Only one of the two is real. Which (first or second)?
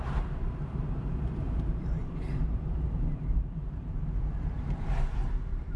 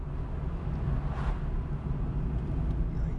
second